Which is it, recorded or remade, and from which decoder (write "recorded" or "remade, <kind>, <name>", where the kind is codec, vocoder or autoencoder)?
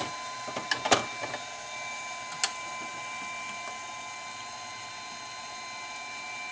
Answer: recorded